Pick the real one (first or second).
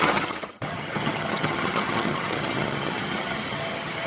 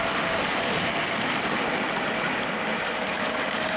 second